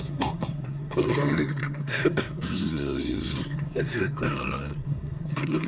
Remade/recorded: remade